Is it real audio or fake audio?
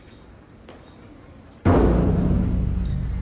real